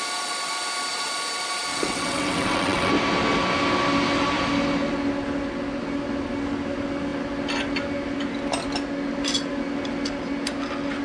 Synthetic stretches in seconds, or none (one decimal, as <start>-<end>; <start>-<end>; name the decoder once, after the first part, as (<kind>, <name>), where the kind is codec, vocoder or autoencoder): 1.7-2.9 (vocoder, WaveNeXt)